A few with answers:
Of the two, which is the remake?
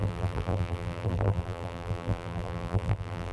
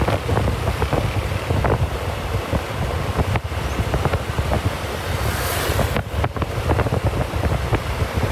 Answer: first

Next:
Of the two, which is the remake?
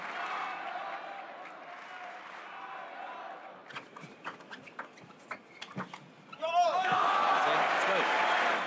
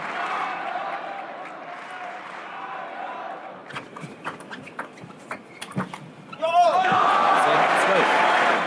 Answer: second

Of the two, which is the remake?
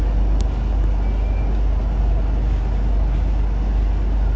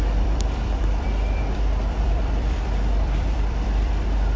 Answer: second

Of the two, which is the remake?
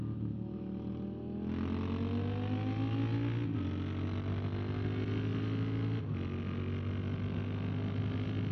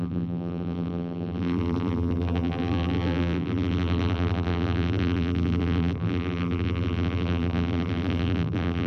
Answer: second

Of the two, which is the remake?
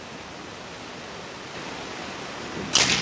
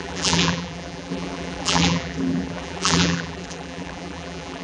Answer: second